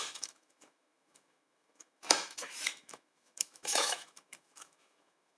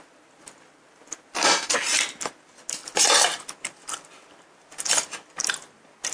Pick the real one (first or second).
second